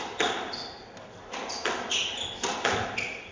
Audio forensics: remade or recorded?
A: recorded